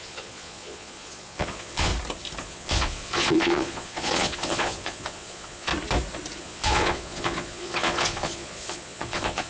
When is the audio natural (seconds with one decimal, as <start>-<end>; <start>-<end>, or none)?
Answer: 1.9-2.4; 5.7-6.4